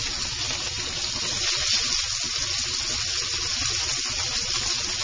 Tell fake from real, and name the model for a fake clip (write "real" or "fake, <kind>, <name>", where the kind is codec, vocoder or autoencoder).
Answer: real